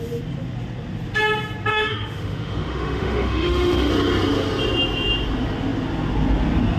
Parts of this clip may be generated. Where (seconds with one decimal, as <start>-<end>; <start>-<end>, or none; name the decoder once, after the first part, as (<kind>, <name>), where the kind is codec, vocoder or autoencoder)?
1.7-3.9 (autoencoder, DAC-VAE)